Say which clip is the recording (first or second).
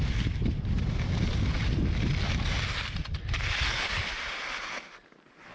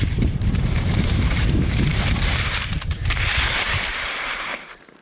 first